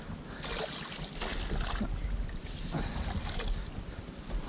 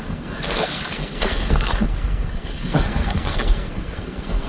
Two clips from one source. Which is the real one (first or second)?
first